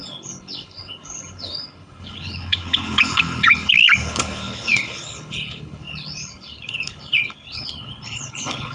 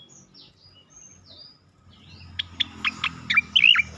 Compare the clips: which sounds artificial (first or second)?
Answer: first